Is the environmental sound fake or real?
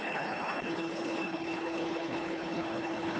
fake